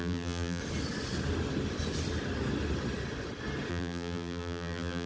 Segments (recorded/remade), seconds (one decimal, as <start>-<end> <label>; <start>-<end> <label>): 0.0-0.6 remade; 0.6-3.7 recorded; 3.7-5.1 remade